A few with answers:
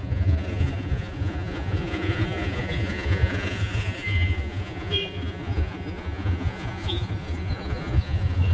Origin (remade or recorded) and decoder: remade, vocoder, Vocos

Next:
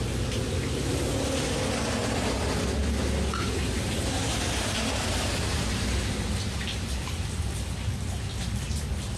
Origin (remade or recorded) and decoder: recorded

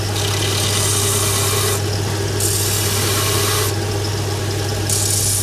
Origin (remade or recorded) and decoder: recorded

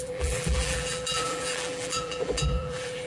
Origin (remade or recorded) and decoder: remade, vocoder, BigVGAN v2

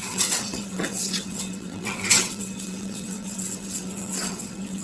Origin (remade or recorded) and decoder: remade, vocoder, WaveNeXt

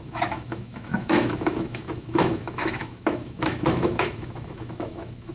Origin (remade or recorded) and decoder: remade, autoencoder, DAC-VAE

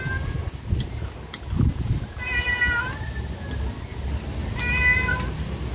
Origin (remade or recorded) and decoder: recorded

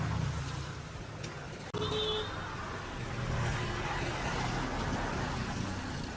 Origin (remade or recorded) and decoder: recorded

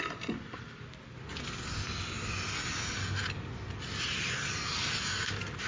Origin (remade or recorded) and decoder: recorded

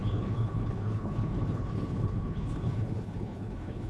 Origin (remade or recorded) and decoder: remade, codec, HILCodec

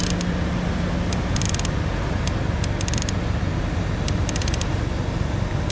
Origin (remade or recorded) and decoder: recorded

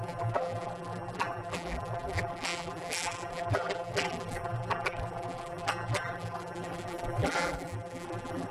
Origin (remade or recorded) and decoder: remade, vocoder, BigVGAN v2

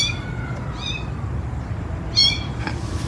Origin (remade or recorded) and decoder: recorded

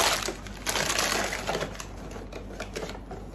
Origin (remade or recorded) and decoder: recorded